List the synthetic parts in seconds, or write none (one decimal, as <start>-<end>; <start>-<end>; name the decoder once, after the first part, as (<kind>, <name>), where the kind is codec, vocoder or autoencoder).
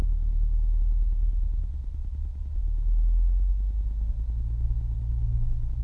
none